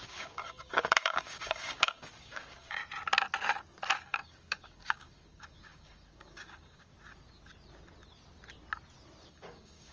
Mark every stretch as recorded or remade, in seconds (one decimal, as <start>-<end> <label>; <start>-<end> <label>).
0.0-2.8 remade; 2.8-4.0 recorded; 4.0-6.9 remade; 6.9-9.3 recorded; 9.3-9.9 remade